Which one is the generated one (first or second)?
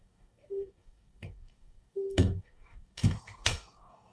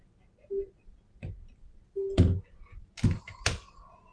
first